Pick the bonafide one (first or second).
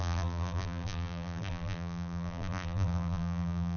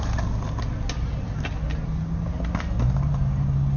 second